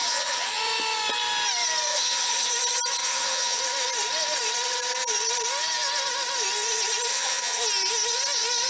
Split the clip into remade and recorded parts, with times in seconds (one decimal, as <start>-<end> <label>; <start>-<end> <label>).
0.0-0.6 remade; 0.6-1.9 recorded; 1.9-2.5 remade; 2.5-3.0 recorded; 3.0-3.6 remade; 3.6-7.1 recorded; 7.1-7.6 remade; 7.6-8.7 recorded